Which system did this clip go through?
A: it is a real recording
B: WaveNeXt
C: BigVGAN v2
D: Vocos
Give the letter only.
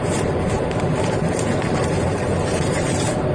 C